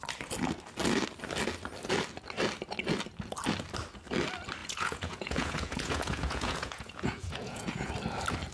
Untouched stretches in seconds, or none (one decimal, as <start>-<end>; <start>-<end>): 0.0-4.6; 7.9-8.5